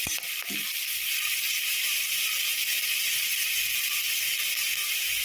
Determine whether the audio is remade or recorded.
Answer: recorded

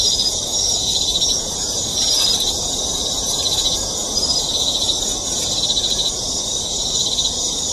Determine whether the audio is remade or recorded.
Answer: remade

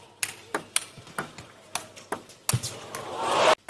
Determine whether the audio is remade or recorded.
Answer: recorded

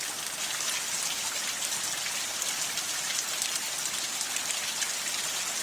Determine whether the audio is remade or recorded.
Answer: recorded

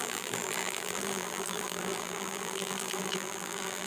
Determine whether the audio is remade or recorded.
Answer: remade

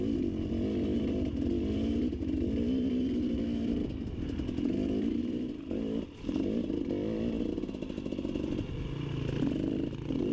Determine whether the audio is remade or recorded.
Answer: recorded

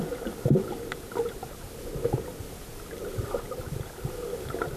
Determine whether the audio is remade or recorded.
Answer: recorded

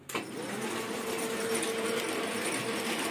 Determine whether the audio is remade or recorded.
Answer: recorded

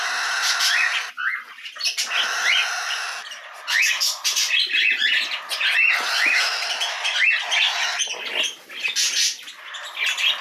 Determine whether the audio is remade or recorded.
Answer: recorded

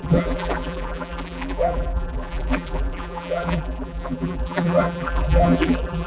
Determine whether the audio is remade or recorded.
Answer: remade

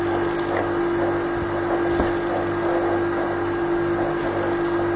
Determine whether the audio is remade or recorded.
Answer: recorded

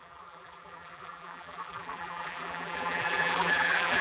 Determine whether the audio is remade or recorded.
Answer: remade